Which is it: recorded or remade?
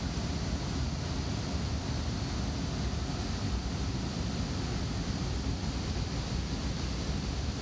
recorded